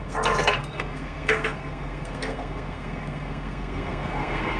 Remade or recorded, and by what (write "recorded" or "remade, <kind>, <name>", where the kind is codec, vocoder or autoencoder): remade, codec, SNAC